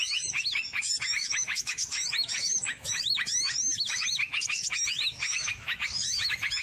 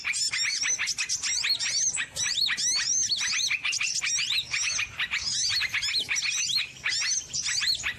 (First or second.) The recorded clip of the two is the second